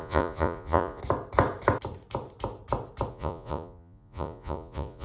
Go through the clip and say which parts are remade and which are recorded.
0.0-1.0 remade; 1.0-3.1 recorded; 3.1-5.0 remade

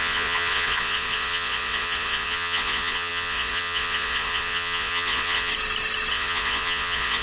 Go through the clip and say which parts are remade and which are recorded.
0.0-5.5 remade; 5.5-6.1 recorded; 6.1-7.2 remade